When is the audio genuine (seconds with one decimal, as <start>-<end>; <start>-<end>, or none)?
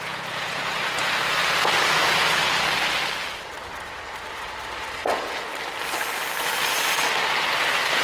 2.4-5.1; 5.5-8.0